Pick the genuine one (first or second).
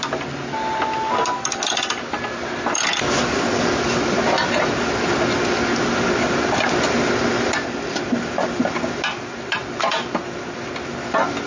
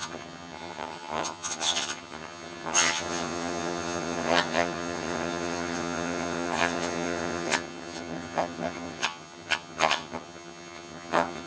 first